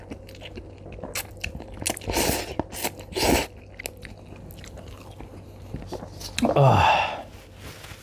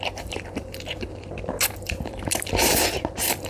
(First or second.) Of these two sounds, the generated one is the second